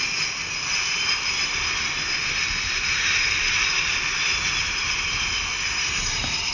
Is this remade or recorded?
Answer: recorded